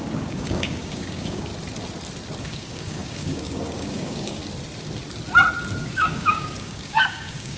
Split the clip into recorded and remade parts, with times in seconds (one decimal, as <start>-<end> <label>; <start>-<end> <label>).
0.0-1.5 remade; 1.5-2.4 recorded; 2.4-4.4 remade; 4.4-5.8 recorded; 5.8-7.6 remade